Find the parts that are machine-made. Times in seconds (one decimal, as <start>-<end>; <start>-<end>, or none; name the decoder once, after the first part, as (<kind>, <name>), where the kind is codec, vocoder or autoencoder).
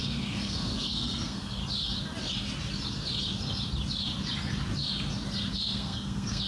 0.0-1.6 (codec, SNAC); 5.5-6.5